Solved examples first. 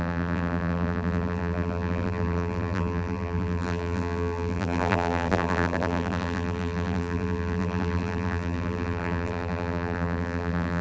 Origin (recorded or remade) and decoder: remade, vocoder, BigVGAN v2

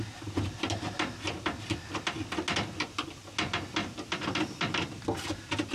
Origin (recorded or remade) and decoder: recorded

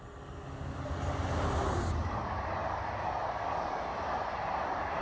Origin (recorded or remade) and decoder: recorded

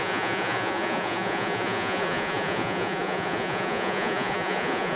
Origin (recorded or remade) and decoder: remade, vocoder, Vocos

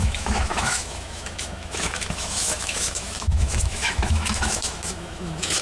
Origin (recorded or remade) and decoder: remade, autoencoder, DAC-VAE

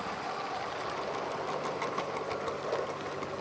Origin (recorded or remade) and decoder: recorded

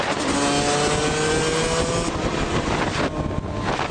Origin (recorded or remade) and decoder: recorded